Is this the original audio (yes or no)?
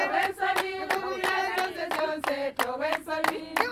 yes